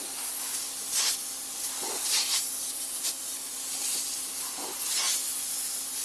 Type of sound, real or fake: real